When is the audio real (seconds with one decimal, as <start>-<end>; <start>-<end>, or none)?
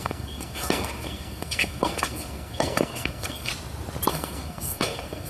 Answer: 3.5-4.1